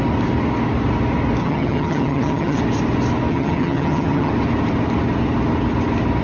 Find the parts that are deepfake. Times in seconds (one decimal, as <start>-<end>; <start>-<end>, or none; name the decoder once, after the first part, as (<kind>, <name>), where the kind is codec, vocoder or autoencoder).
1.4-2.6 (vocoder, HiFi-GAN); 3.3-4.3